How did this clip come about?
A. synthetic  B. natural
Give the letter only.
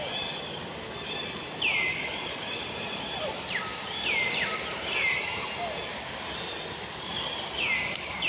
B